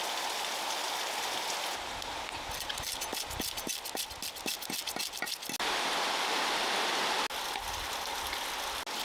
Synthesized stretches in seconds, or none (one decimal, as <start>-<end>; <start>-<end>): none